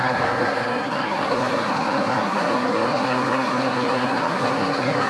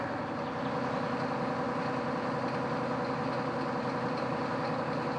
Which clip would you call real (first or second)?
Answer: second